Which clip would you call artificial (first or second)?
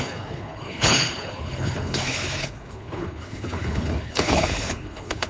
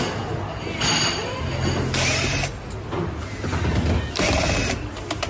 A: first